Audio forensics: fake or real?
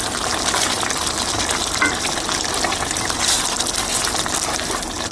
real